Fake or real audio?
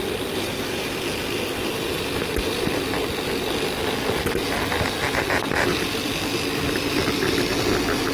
real